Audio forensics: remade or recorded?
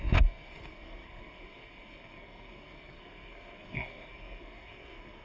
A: remade